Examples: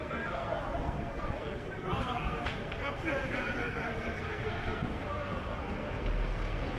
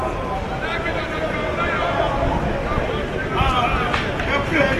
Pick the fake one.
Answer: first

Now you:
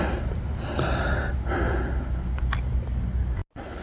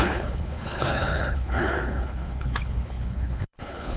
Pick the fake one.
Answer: second